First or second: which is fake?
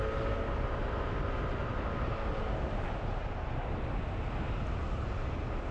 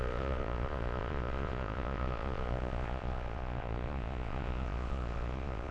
second